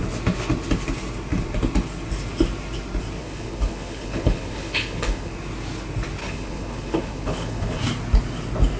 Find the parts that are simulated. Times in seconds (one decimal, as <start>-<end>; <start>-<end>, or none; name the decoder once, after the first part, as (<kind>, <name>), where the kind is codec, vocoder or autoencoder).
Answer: 3.2-5.3 (codec, HILCodec); 6.2-7.8